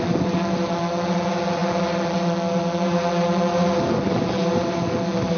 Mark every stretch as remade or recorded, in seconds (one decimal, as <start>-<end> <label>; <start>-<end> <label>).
0.0-5.4 recorded